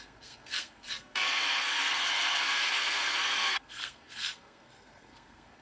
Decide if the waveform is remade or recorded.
remade